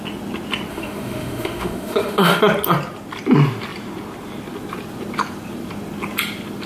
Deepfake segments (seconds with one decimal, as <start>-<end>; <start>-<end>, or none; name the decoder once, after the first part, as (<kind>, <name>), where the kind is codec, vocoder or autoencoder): 0.7-2.4 (autoencoder, DAC-VAE)